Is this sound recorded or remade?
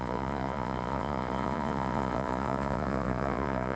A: remade